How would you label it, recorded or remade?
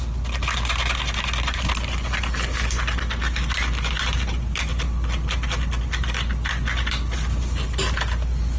recorded